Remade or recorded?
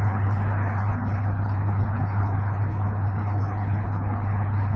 remade